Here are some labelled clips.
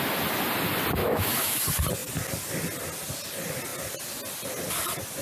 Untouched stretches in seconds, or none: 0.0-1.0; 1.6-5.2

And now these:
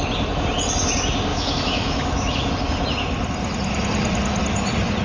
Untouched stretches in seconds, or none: 0.0-1.3; 2.5-5.0

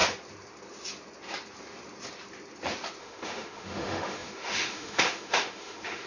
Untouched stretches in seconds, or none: 0.0-3.0

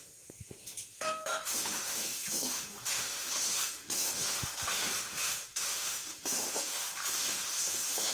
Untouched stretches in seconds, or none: none

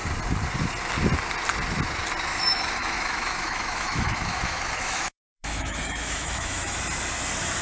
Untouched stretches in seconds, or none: 0.0-2.3; 6.8-7.6

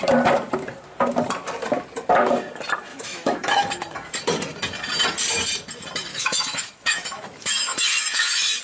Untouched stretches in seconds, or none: 0.0-2.9; 3.7-6.1

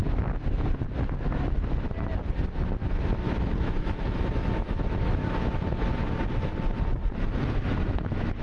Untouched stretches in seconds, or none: 0.0-3.6; 5.2-7.8

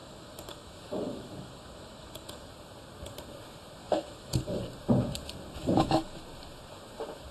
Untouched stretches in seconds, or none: 2.5-3.8; 4.4-5.6; 6.2-7.3